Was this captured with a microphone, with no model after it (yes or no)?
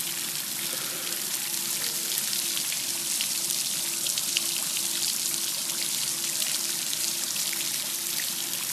yes